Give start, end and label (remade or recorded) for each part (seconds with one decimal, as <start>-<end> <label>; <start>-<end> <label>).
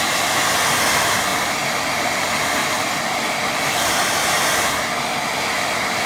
0.0-2.6 recorded; 2.6-3.4 remade; 3.4-6.1 recorded